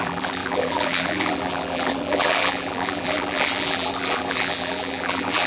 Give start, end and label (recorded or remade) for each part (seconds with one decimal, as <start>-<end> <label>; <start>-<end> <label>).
0.0-5.5 remade